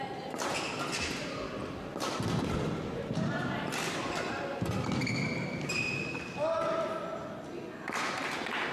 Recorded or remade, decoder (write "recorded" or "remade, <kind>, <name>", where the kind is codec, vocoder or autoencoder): recorded